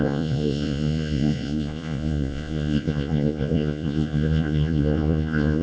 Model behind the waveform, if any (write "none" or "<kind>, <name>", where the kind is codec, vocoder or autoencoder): vocoder, Vocos